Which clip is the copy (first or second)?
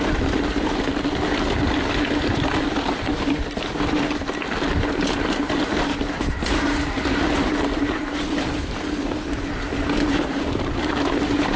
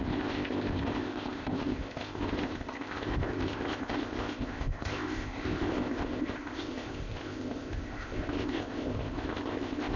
second